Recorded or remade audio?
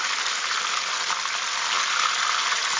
remade